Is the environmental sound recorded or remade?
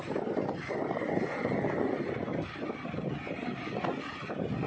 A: recorded